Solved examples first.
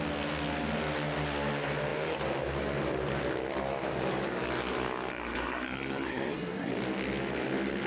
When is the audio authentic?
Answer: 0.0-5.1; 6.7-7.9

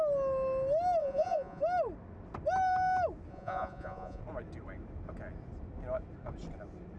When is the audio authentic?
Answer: 0.0-1.0; 1.6-3.3; 4.2-7.0

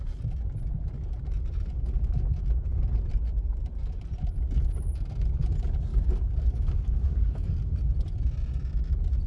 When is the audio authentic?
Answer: 0.0-5.9; 7.5-9.3

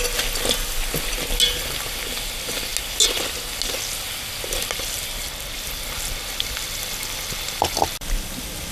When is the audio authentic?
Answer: 0.0-8.7

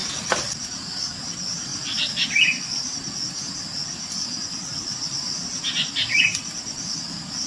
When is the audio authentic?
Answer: 0.0-7.5

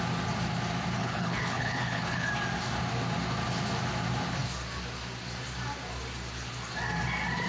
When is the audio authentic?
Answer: 0.0-1.0; 2.3-7.5